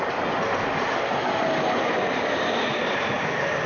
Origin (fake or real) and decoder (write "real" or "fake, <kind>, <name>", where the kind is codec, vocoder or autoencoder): real